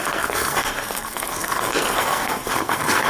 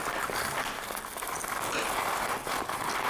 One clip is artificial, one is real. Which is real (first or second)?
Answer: second